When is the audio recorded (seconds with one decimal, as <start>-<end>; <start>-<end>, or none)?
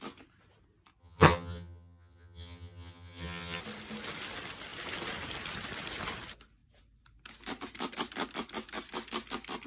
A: 0.0-1.0; 3.6-9.7